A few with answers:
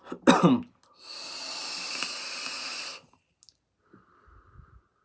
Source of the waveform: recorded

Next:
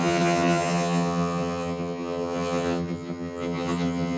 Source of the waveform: remade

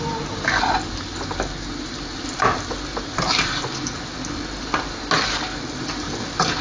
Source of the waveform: recorded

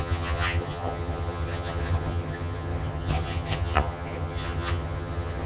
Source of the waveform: remade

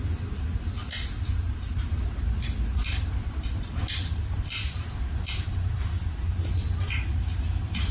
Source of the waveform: recorded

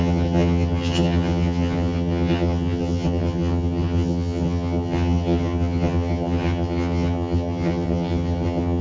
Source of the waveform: remade